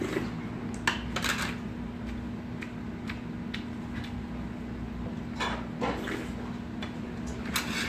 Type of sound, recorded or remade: recorded